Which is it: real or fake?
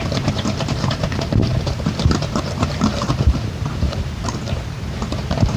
fake